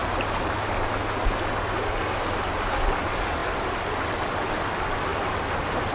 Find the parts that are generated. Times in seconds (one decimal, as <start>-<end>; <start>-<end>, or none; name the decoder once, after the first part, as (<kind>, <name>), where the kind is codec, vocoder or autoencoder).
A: 5.1-5.9 (vocoder, BigVGAN v2)